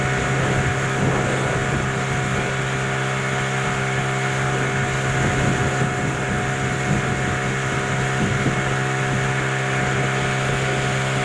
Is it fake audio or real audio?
real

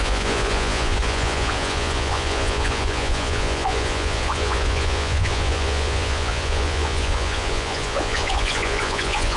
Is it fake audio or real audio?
fake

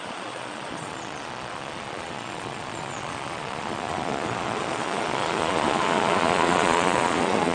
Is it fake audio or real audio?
fake